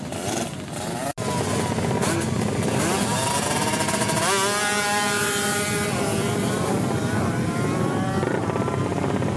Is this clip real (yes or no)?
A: yes